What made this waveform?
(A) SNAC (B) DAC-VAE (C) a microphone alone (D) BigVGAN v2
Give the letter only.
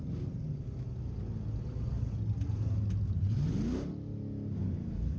C